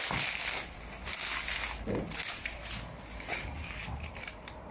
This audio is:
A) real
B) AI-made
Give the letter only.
A